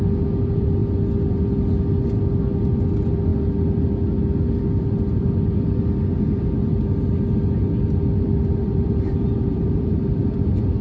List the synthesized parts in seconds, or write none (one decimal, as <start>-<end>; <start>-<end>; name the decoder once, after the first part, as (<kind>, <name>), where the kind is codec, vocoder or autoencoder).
8.6-10.2 (vocoder, BigVGAN v2)